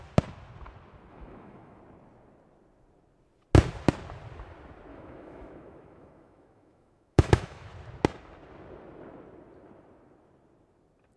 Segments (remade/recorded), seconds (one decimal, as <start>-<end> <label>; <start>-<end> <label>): 0.0-1.1 recorded; 1.1-1.8 remade; 1.8-4.9 recorded; 4.9-7.7 remade; 7.7-11.2 recorded